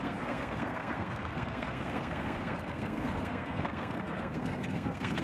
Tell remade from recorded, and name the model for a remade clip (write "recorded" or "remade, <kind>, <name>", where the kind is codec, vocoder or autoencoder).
remade, codec, SNAC